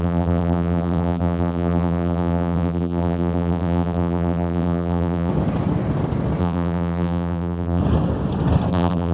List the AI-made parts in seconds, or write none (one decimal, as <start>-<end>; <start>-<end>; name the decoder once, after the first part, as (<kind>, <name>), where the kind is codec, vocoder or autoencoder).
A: 0.0-5.3 (vocoder, BigVGAN v2); 6.4-7.8; 8.7-9.1